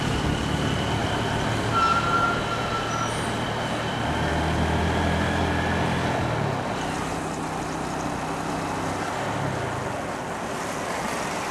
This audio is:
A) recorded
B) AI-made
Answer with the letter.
A